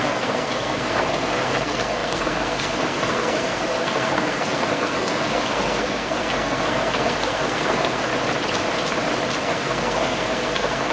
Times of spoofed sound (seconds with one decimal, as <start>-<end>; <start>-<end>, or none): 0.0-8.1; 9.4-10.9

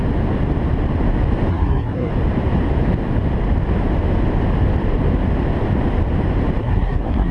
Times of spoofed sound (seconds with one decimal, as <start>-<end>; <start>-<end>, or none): 1.5-2.1; 6.6-7.3

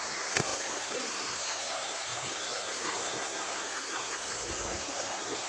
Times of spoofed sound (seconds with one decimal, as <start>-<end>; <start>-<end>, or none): 0.0-5.5

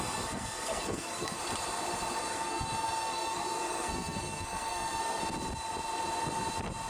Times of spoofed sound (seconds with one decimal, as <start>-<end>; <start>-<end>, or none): 0.0-1.4; 2.2-5.2